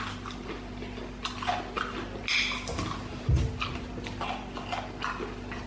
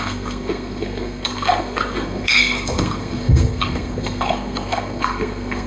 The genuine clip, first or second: first